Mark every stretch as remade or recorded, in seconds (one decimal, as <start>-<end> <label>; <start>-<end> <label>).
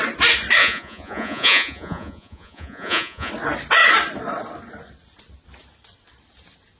0.0-0.6 recorded; 0.6-3.3 remade; 3.3-6.8 recorded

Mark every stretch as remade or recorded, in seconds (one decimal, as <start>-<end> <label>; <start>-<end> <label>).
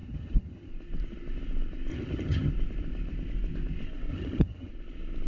0.0-0.7 remade; 0.7-1.9 recorded; 1.9-2.5 remade; 2.5-4.1 recorded; 4.1-4.7 remade; 4.7-5.3 recorded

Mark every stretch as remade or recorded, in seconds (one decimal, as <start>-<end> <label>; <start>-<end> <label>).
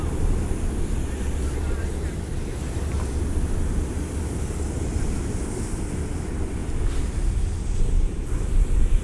0.0-9.0 recorded